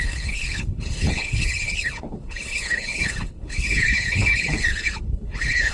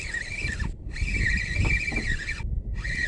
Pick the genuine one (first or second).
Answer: second